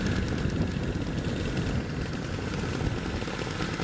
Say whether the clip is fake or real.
real